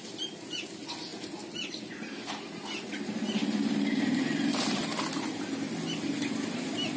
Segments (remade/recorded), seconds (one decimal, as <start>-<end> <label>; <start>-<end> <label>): 0.0-7.0 recorded